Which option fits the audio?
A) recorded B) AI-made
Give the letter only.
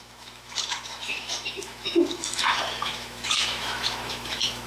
B